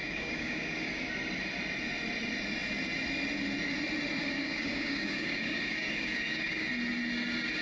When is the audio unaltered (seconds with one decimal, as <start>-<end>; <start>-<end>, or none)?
0.9-4.2; 6.7-7.6